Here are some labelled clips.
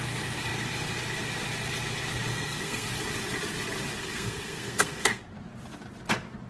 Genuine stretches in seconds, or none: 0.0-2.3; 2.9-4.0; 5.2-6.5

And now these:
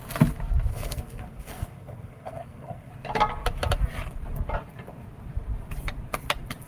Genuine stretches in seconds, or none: 0.0-0.7; 2.9-6.7

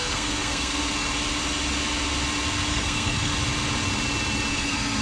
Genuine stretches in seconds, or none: 0.8-2.7; 3.3-4.5

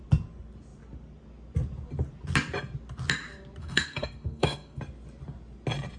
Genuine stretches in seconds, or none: 0.0-3.6; 4.8-6.0

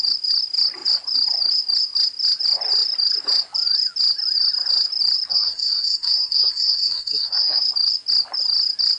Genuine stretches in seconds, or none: 0.0-5.3; 7.6-9.0

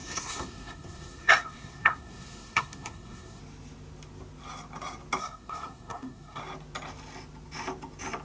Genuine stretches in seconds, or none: 3.4-5.2; 6.4-8.2

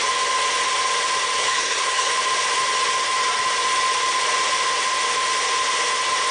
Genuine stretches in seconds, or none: 0.0-1.4; 2.1-6.3

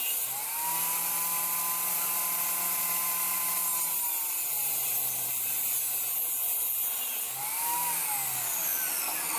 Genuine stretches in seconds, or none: 0.0-9.4